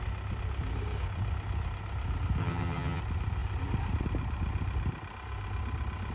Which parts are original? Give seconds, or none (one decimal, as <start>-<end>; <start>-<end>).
0.0-2.4; 3.0-6.1